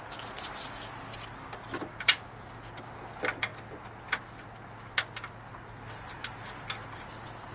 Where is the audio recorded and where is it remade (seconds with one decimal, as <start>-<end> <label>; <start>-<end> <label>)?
0.0-1.6 recorded; 1.6-3.0 remade; 3.0-7.5 recorded